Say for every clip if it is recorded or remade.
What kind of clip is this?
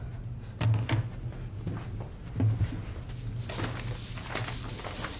recorded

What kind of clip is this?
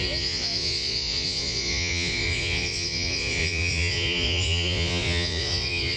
remade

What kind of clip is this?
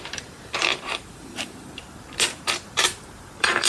remade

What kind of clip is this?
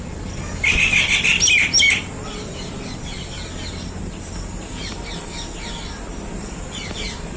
recorded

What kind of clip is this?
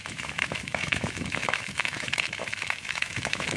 remade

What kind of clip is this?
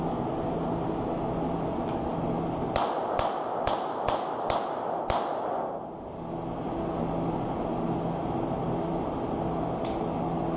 recorded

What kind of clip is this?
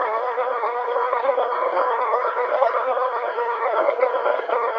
remade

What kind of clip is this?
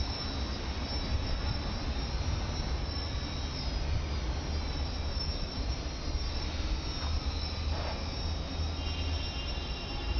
recorded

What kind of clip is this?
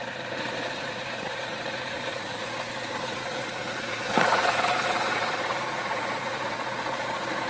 remade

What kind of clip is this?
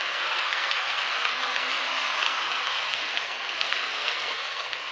remade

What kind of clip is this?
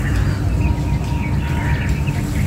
recorded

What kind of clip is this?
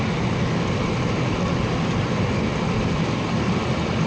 recorded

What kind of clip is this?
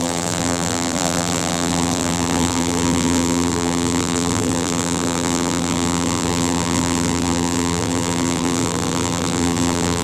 remade